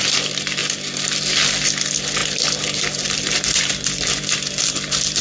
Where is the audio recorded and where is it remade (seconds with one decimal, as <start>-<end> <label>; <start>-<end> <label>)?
0.0-0.6 recorded; 0.6-1.2 remade; 1.2-2.2 recorded; 2.2-4.6 remade; 4.6-5.2 recorded